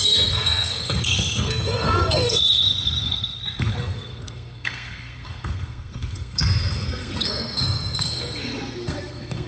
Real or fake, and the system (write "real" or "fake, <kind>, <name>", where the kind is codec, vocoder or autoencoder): fake, codec, SNAC